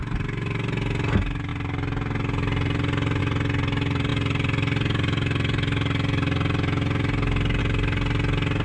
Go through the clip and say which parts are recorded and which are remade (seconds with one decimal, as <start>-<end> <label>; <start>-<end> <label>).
0.0-8.6 recorded